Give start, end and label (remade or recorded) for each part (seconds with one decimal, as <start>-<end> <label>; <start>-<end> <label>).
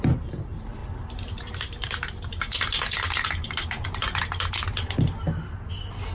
0.0-0.8 recorded; 0.8-4.2 remade; 4.2-6.1 recorded